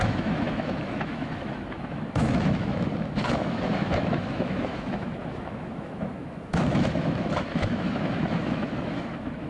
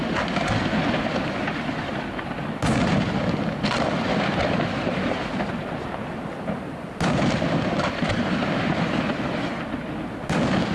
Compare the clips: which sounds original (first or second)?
second